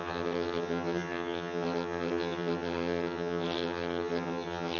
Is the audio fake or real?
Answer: fake